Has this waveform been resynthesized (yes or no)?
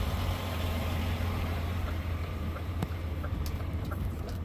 yes